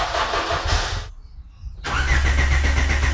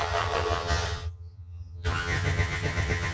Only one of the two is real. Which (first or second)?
first